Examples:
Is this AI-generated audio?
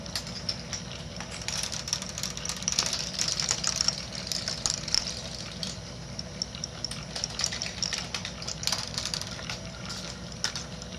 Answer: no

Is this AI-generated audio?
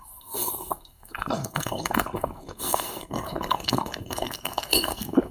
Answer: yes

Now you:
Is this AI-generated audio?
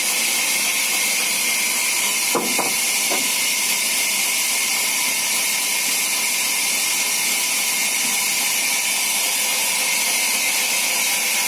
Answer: no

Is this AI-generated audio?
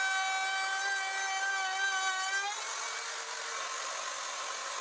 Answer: no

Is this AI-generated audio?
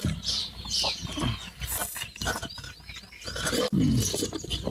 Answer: no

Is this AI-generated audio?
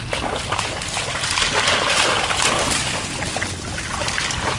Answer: no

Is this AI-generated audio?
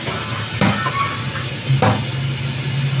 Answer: no